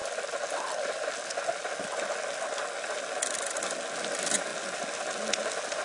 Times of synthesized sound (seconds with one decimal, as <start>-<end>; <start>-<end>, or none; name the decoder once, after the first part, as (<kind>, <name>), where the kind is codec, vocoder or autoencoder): none